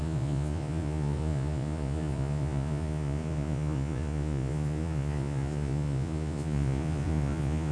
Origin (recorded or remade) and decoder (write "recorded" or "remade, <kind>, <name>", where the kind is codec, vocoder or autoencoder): remade, vocoder, Vocos